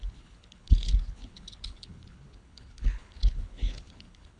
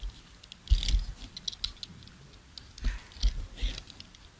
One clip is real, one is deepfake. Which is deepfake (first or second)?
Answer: first